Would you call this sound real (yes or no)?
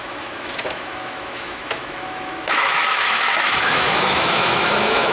no